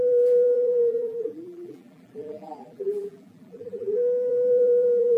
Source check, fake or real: fake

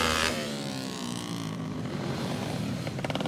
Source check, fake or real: fake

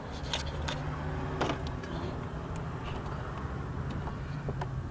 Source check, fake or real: real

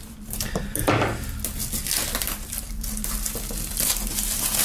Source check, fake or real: fake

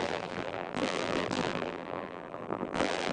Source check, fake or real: fake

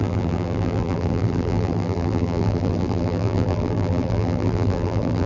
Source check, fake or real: fake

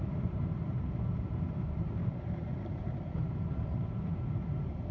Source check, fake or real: fake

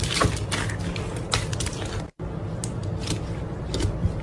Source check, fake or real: real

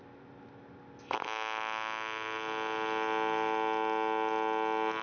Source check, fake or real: real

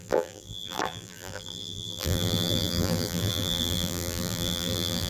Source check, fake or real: fake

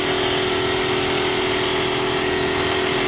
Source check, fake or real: real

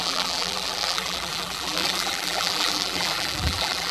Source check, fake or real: fake